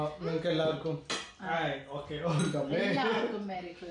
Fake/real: real